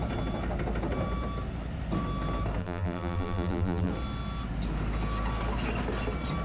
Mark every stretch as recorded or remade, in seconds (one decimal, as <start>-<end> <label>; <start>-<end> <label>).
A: 0.0-2.6 recorded; 2.6-3.9 remade; 3.9-6.4 recorded